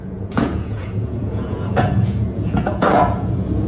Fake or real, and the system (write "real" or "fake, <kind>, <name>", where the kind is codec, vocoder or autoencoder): fake, vocoder, Vocos